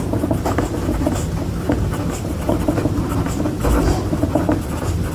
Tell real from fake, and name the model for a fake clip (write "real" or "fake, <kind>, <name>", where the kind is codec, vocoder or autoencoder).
fake, vocoder, BigVGAN v2